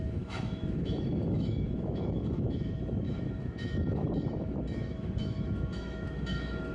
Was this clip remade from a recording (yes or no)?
yes